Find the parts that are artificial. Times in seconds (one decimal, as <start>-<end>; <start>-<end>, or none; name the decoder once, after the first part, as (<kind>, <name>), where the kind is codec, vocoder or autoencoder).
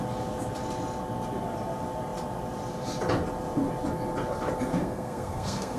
4.7-5.8 (codec, SNAC)